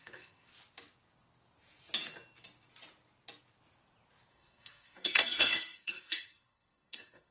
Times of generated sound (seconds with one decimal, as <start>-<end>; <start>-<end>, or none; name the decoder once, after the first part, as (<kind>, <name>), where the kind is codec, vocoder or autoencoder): 0.0-0.5 (codec, SNAC); 4.3-7.3